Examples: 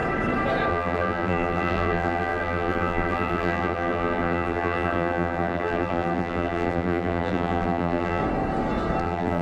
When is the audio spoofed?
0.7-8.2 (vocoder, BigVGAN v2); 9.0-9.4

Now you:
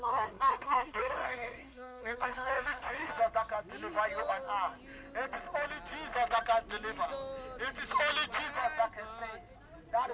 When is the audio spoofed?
0.0-3.1 (codec, SNAC)

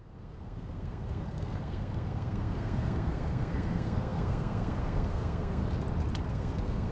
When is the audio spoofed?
0.0-5.6 (codec, SNAC); 6.3-6.9

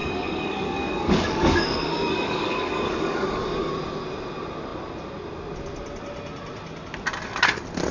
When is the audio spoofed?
0.0-3.7 (codec, DAC)

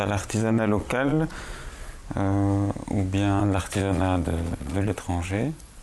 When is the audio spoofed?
0.0-2.0 (vocoder, Vocos); 3.4-5.8

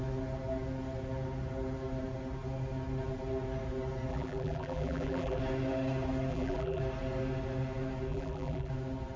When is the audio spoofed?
4.1-5.4 (vocoder, BigVGAN v2); 6.3-6.8; 8.1-8.7

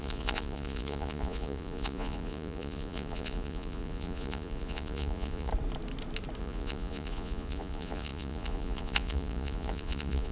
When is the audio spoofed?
0.0-5.5 (vocoder, Vocos); 6.4-10.3